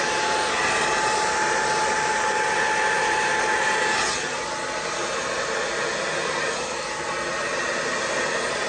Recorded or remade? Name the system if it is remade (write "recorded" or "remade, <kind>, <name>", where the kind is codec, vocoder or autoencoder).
recorded